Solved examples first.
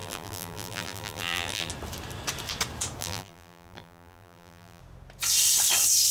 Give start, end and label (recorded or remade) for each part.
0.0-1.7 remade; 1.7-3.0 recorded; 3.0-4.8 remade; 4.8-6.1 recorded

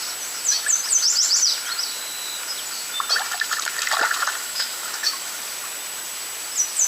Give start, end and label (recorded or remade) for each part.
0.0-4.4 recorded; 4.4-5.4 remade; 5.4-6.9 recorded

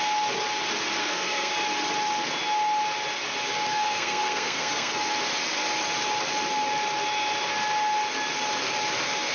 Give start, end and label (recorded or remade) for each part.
0.0-1.0 recorded; 1.0-1.5 remade; 1.5-3.7 recorded; 3.7-5.1 remade; 5.1-9.3 recorded